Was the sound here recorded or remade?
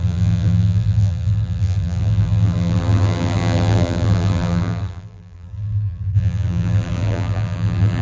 remade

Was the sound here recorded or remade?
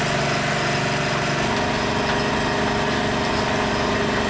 recorded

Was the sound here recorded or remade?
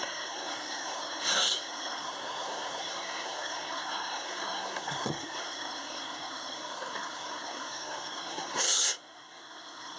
remade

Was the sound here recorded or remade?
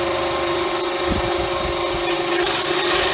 recorded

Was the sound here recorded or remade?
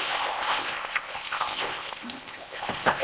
remade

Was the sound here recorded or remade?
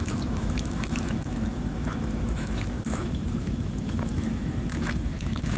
remade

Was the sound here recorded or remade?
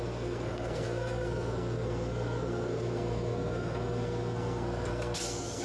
remade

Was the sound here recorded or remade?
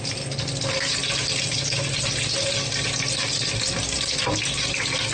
recorded